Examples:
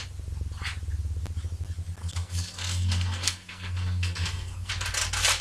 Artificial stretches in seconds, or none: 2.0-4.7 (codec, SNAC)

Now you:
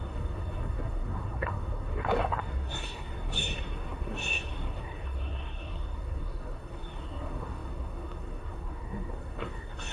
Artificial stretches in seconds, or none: 0.0-9.9 (codec, SNAC)